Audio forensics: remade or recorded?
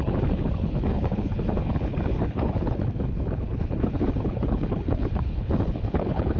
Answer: remade